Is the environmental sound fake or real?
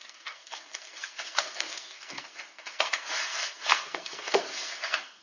fake